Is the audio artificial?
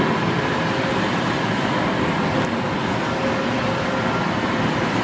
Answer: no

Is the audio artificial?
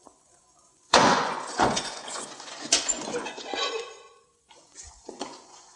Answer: yes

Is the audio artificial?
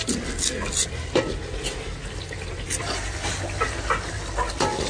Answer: no